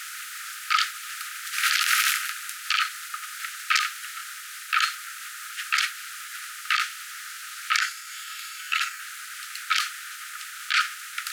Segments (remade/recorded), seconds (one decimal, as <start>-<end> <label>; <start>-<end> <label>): 0.0-7.8 recorded; 7.8-9.0 remade; 9.0-11.3 recorded